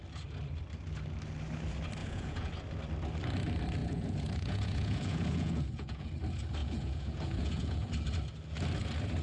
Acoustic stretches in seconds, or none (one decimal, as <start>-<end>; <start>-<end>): 0.0-2.0; 2.5-3.8; 6.1-6.6; 7.9-9.2